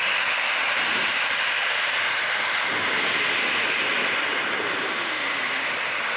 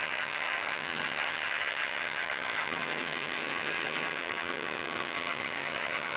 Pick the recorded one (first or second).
first